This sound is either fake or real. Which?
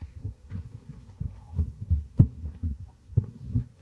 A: fake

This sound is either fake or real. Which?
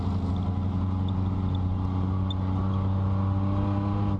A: real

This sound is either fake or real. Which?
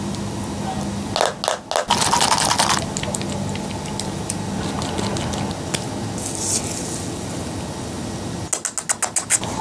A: real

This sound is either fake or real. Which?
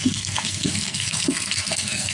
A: fake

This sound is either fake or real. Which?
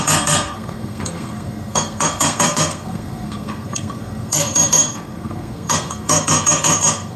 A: fake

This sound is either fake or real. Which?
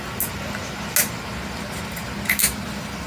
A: real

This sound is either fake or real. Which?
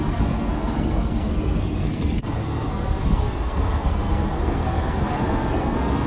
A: fake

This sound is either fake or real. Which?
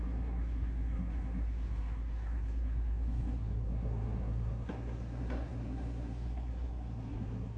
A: fake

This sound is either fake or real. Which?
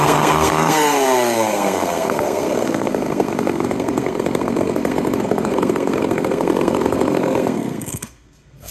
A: fake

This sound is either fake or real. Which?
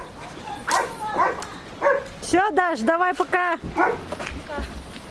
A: real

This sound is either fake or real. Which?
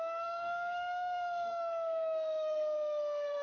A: fake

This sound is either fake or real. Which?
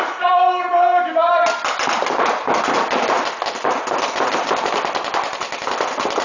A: real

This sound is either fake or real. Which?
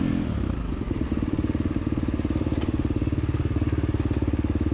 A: real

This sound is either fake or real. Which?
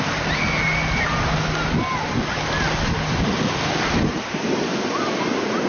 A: real